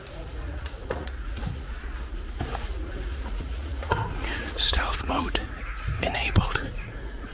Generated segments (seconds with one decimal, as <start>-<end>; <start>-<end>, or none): 0.0-1.7; 2.5-7.3